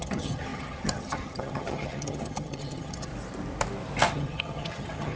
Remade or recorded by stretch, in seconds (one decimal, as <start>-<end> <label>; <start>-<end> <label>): 0.0-3.1 remade; 3.1-4.1 recorded; 4.1-5.2 remade